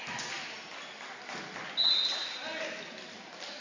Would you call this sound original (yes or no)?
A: yes